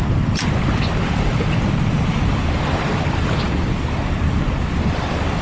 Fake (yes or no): yes